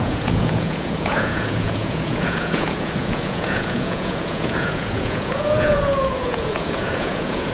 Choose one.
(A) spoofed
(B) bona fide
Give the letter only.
A